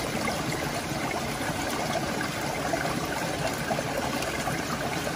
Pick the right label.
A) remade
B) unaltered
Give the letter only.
B